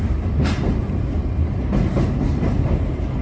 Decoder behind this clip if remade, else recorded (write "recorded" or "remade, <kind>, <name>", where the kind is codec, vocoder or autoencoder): remade, vocoder, BigVGAN v2